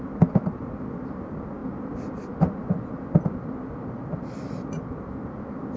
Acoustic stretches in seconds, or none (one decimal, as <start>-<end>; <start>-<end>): 0.0-5.8